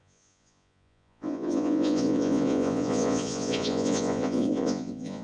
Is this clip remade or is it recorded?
remade